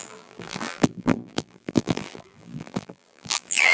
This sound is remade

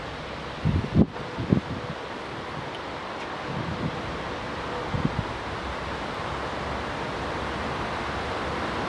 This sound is recorded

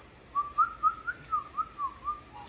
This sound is recorded